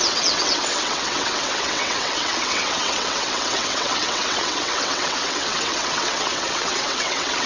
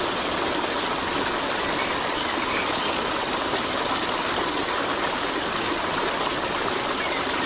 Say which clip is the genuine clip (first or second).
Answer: second